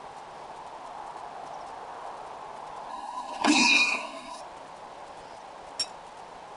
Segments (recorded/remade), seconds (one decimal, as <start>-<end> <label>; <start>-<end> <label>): 0.0-2.9 recorded; 2.9-4.4 remade; 4.4-6.6 recorded